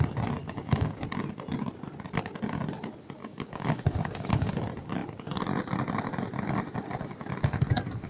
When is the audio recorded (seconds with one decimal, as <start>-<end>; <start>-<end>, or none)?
0.0-0.4; 1.0-3.2; 4.5-8.1